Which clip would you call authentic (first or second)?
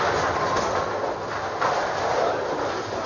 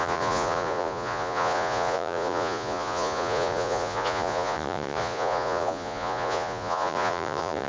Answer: first